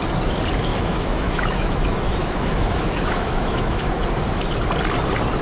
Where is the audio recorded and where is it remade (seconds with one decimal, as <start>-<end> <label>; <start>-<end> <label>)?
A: 0.0-0.7 recorded; 0.7-3.9 remade; 3.9-5.4 recorded

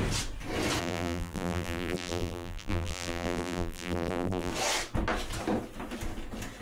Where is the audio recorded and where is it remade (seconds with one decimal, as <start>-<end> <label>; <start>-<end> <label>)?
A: 0.0-0.8 recorded; 0.8-4.5 remade; 4.5-6.6 recorded